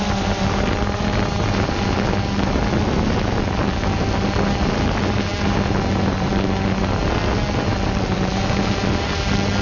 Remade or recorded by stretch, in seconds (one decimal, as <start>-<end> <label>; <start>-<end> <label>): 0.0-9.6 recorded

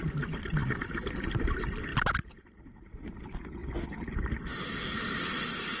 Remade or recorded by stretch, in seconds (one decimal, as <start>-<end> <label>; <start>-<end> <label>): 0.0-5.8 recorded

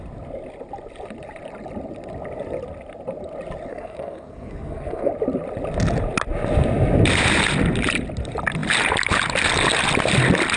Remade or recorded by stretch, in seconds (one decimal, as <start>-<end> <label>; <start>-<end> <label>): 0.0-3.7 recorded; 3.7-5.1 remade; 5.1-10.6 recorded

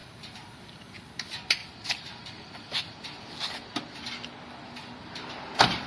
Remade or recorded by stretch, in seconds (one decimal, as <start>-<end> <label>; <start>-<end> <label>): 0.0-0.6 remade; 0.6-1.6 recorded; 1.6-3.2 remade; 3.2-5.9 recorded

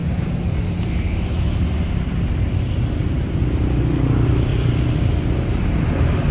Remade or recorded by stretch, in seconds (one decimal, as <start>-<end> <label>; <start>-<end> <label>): 0.0-4.5 recorded; 4.5-5.6 remade; 5.6-6.3 recorded

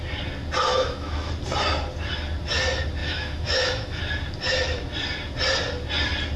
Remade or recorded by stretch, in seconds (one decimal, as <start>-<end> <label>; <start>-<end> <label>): 0.0-0.7 recorded; 0.7-1.3 remade; 1.3-3.0 recorded; 3.0-4.0 remade; 4.0-6.4 recorded

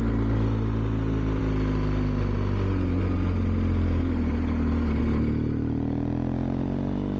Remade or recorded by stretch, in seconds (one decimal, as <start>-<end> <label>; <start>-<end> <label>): 0.0-7.2 recorded

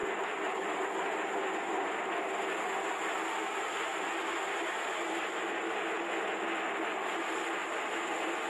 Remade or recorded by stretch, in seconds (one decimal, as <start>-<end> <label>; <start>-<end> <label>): 0.0-8.5 recorded